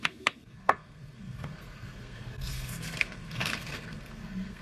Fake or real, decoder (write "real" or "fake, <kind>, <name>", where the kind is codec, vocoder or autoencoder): fake, codec, SNAC